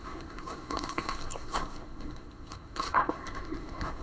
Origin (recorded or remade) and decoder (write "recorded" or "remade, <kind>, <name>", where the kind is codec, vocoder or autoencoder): remade, codec, SNAC